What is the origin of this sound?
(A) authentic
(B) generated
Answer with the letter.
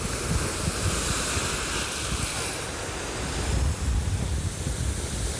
A